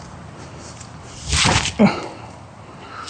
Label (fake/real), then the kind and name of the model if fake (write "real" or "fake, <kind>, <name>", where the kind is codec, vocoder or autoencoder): real